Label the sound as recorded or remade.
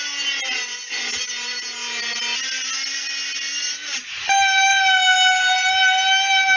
recorded